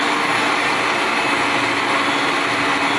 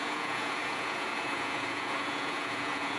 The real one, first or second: first